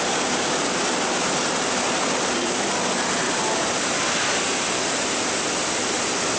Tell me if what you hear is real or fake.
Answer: real